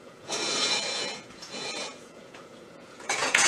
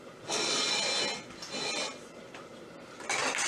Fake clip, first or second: first